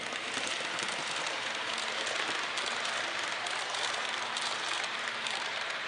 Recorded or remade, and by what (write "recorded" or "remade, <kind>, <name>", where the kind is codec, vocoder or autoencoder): remade, vocoder, BigVGAN v2